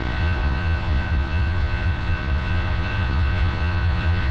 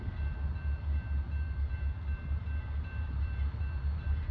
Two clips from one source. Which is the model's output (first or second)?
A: first